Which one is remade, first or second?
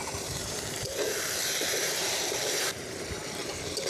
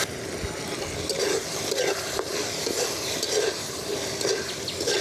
first